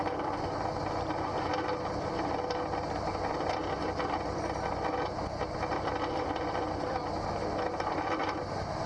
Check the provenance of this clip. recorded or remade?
recorded